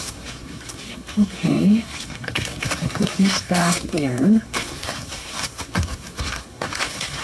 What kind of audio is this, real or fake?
fake